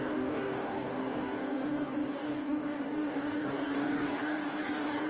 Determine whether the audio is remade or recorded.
remade